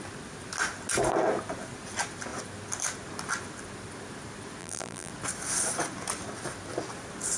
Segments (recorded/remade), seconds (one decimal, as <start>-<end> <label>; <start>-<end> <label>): 0.0-4.6 recorded; 4.6-5.1 remade; 5.1-7.4 recorded